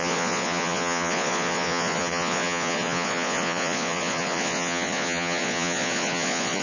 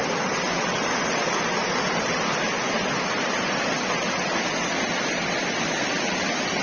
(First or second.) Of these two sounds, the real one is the second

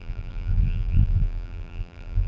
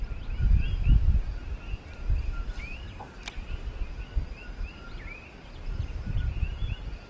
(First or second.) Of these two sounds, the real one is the second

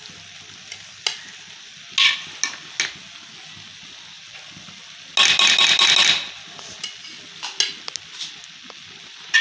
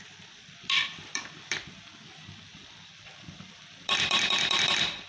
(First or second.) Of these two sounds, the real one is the first